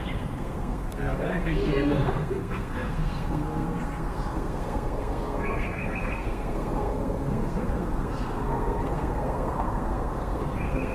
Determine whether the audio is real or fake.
fake